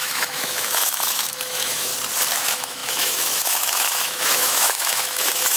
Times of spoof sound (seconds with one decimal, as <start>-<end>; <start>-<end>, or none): 0.0-1.9; 2.4-5.6